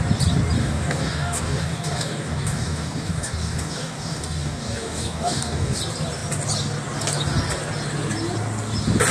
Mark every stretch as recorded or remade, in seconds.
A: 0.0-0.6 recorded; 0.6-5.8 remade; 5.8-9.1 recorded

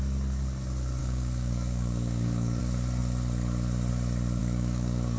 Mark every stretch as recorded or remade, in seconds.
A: 0.0-1.0 recorded; 1.0-2.6 remade; 2.6-4.4 recorded; 4.4-5.2 remade

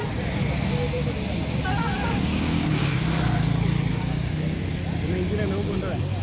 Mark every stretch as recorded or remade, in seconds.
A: 0.0-1.8 recorded; 1.8-2.9 remade; 2.9-3.9 recorded; 3.9-4.6 remade; 4.6-6.2 recorded